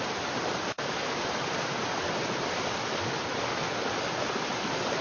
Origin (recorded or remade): recorded